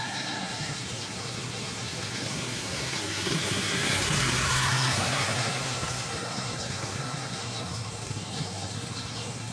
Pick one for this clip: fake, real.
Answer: fake